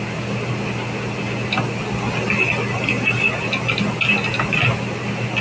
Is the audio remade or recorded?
recorded